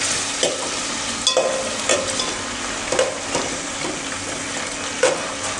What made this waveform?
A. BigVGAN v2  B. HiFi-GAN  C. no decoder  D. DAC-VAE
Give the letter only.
C